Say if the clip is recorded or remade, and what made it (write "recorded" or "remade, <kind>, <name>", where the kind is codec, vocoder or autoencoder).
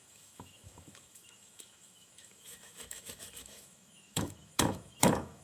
remade, autoencoder, DAC-VAE